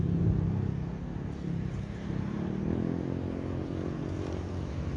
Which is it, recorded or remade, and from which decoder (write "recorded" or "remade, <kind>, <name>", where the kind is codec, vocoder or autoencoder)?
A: recorded